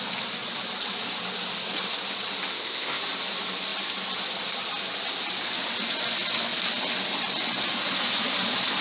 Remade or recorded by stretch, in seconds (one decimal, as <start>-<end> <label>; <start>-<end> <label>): 0.0-2.5 recorded; 2.5-3.0 remade; 3.0-8.8 recorded

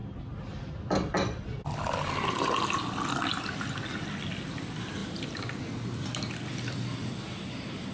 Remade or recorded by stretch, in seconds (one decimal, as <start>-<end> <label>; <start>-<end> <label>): 0.0-5.0 recorded; 5.0-5.6 remade; 5.6-7.9 recorded

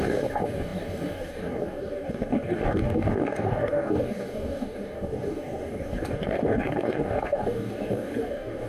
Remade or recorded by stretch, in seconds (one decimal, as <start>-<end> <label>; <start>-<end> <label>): 0.0-8.7 remade

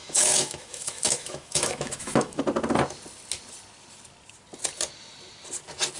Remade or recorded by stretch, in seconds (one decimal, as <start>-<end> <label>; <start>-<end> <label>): 0.0-2.4 remade; 2.4-6.0 recorded